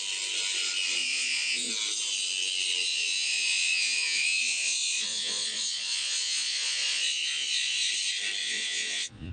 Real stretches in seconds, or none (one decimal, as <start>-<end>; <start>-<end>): 0.0-1.0; 1.7-2.9; 7.9-8.4